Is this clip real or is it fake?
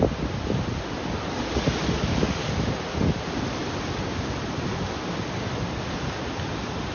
real